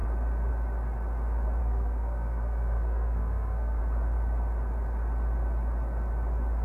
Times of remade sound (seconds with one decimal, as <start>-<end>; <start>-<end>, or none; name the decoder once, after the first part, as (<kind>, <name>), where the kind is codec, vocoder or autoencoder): 1.6-3.8 (codec, SNAC)